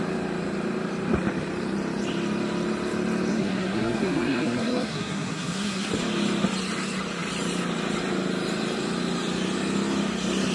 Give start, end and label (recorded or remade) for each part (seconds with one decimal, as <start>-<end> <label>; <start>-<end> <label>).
0.0-3.3 recorded; 3.3-5.9 remade; 5.9-10.5 recorded